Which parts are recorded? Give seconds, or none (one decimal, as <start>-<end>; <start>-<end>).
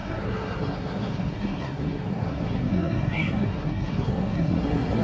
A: none